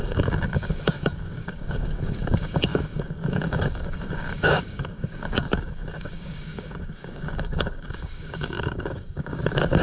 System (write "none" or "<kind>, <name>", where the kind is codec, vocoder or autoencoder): codec, DAC